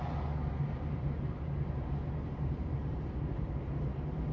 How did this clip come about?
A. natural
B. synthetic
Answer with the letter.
B